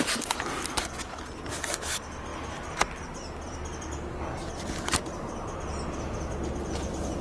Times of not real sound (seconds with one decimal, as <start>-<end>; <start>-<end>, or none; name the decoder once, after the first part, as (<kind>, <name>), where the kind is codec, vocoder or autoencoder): none